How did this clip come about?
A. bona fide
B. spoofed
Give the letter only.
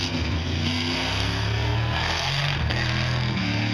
B